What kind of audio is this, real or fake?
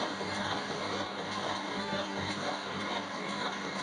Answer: fake